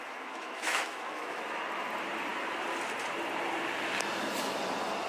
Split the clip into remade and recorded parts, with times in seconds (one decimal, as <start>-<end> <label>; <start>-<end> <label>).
0.0-1.6 remade; 1.6-5.1 recorded